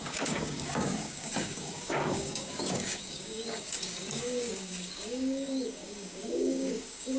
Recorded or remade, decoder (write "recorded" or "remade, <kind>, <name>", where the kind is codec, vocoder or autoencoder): remade, codec, DAC